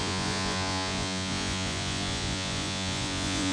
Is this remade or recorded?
remade